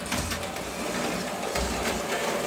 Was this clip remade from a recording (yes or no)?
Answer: no